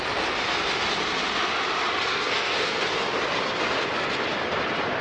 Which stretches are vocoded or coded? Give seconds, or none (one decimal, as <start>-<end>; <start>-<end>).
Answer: 2.1-2.8